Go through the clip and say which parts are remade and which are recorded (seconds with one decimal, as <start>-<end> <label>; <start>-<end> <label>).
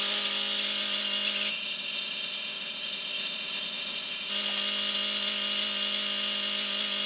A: 0.0-1.5 recorded; 1.5-4.3 remade; 4.3-7.1 recorded